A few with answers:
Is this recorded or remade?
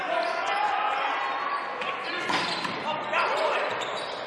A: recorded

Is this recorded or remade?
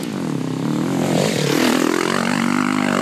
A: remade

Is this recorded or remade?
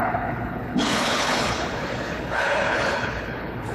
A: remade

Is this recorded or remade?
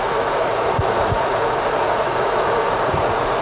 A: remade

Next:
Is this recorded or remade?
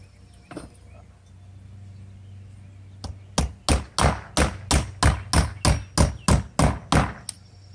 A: recorded